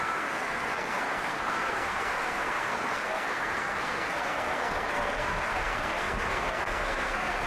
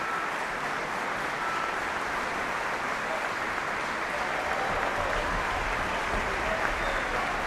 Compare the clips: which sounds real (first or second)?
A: second